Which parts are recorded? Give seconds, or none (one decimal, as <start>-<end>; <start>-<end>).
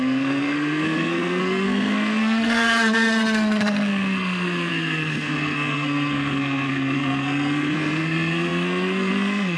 none